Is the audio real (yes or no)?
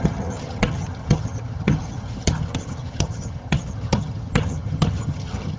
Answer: no